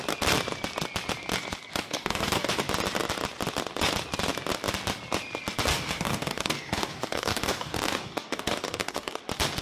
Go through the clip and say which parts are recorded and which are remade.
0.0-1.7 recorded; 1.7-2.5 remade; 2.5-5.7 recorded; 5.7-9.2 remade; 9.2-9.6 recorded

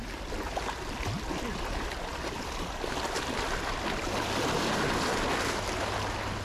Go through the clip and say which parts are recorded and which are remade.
0.0-6.4 recorded

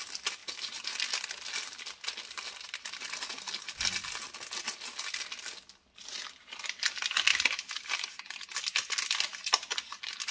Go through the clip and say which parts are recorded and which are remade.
0.0-10.3 recorded

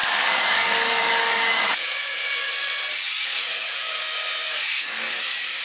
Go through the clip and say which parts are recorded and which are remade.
0.0-2.5 remade; 2.5-3.0 recorded; 3.0-4.0 remade; 4.0-4.5 recorded; 4.5-5.6 remade

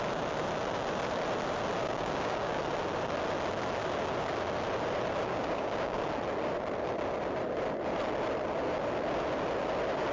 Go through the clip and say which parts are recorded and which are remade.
0.0-1.8 recorded; 1.8-2.6 remade; 2.6-5.3 recorded; 5.3-6.0 remade; 6.0-10.1 recorded